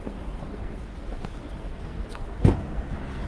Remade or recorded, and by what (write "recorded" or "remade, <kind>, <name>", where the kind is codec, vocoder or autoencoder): remade, codec, SNAC